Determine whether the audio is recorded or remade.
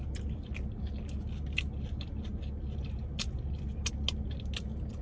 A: recorded